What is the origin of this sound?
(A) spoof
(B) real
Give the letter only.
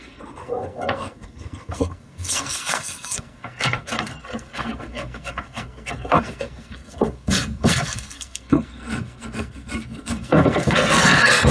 A